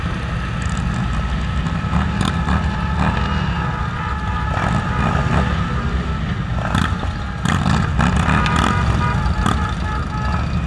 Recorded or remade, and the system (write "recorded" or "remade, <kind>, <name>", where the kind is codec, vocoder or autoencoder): recorded